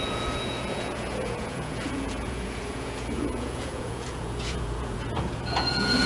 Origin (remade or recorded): remade